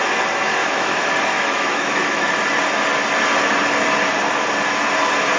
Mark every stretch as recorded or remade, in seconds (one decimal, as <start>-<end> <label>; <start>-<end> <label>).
0.0-0.6 recorded; 0.6-2.3 remade; 2.3-5.4 recorded